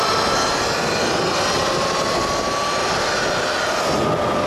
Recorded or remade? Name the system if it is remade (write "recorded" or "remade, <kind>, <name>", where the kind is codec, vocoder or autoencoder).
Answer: recorded